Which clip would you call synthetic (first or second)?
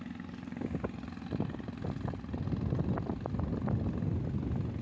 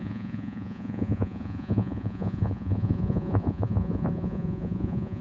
second